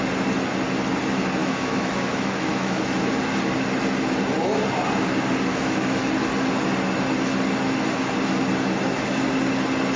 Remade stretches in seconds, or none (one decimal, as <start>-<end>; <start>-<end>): 1.4-2.8; 5.5-6.1